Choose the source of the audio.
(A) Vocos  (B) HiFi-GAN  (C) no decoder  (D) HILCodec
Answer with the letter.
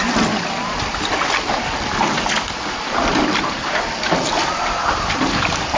C